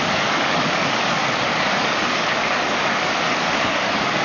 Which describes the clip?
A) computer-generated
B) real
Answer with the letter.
A